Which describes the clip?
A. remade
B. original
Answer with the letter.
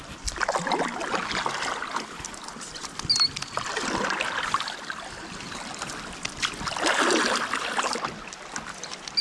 B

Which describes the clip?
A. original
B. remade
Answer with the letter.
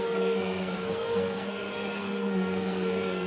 B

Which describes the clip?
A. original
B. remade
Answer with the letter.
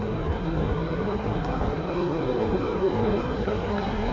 B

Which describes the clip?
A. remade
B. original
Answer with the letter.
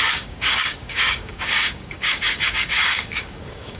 A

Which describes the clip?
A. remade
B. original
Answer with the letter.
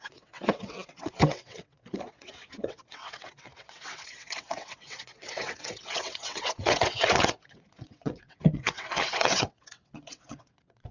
A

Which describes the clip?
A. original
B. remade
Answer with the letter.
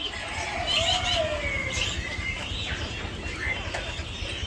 A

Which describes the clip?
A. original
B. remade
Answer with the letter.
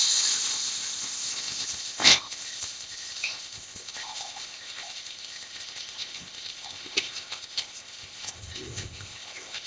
B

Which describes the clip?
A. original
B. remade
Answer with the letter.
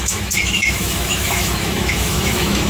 B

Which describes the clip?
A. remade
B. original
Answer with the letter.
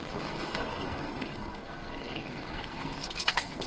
A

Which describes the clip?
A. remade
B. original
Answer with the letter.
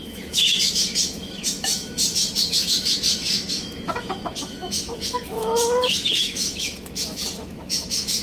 A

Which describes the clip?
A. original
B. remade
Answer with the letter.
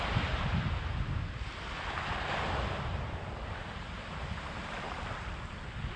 A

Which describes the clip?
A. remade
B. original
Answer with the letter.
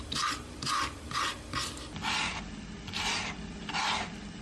B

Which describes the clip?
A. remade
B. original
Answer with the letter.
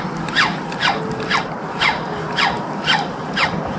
B